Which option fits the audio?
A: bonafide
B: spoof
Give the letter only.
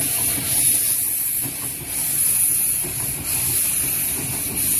A